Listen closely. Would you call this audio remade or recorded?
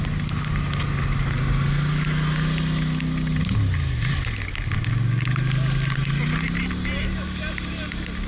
recorded